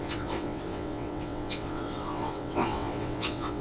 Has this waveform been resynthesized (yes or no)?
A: yes